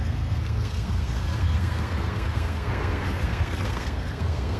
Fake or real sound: fake